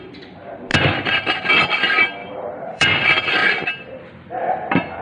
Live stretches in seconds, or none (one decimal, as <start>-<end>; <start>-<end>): 0.0-0.7; 1.5-2.2; 2.9-3.4; 4.1-5.0